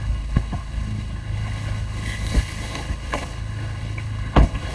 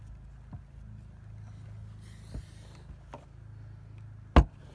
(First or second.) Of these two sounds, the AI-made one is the first